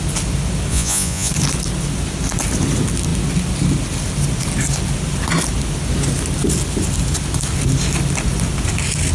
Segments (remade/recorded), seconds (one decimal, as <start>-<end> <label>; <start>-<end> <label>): 0.0-0.7 recorded; 0.7-1.3 remade; 1.3-9.1 recorded